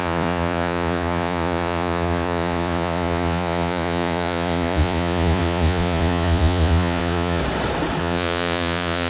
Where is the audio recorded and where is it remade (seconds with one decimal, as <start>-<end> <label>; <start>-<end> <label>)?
0.0-7.4 remade; 7.4-8.0 recorded; 8.0-9.1 remade